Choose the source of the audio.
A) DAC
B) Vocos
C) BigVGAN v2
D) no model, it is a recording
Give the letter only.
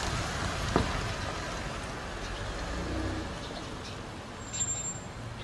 D